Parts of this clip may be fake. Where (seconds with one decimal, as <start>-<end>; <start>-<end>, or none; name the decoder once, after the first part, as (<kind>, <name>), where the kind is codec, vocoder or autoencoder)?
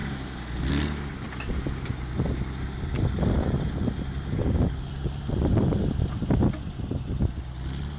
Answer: none